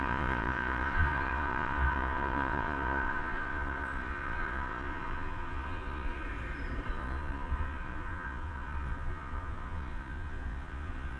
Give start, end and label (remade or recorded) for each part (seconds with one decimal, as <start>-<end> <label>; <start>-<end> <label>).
0.0-6.3 remade; 6.3-6.9 recorded; 6.9-11.2 remade